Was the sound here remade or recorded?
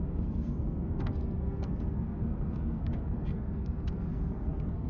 remade